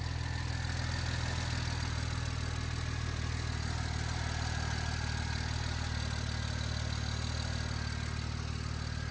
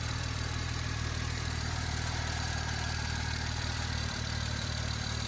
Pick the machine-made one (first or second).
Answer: second